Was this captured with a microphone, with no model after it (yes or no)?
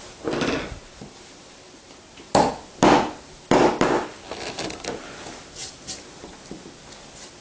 yes